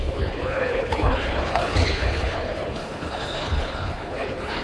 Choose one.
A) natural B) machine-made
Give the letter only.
B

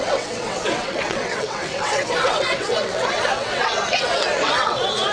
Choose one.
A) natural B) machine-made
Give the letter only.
B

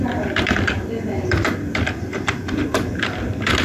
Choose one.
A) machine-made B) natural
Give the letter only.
A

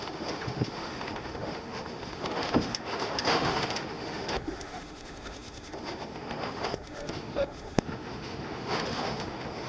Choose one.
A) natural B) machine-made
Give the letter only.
B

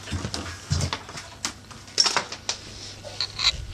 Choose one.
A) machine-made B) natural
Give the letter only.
B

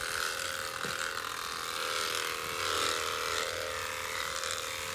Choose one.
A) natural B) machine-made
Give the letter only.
A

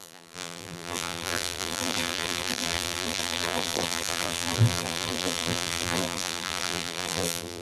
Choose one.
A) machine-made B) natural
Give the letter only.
A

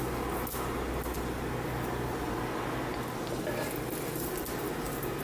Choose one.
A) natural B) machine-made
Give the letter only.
A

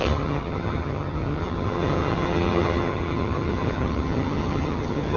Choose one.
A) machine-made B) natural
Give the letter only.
A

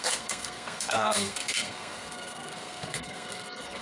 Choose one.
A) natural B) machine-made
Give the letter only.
B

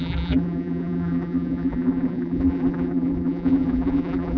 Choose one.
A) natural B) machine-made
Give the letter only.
B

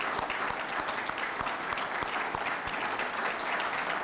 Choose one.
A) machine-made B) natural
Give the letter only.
B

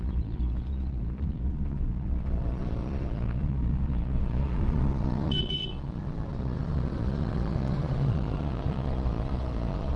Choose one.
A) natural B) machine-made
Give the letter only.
B